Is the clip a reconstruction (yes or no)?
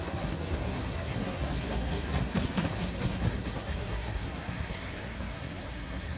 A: yes